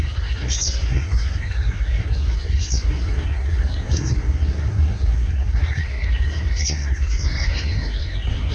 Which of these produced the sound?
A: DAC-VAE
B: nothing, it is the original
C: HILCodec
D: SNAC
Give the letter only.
D